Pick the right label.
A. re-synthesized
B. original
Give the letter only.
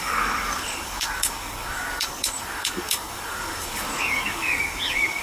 A